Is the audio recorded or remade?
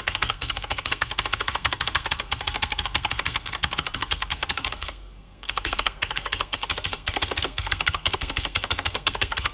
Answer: remade